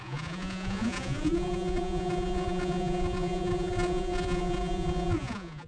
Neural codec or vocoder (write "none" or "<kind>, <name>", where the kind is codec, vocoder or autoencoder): vocoder, Vocos